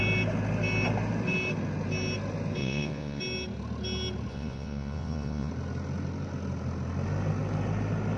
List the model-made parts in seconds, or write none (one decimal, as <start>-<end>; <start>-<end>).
2.6-3.2; 4.3-5.5